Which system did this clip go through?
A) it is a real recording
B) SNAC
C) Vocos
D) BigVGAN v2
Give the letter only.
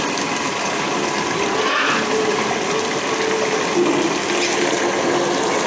A